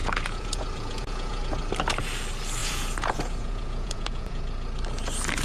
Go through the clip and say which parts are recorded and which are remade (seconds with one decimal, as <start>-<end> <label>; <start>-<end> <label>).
0.0-1.4 remade; 1.4-2.6 recorded; 2.6-4.4 remade; 4.4-5.4 recorded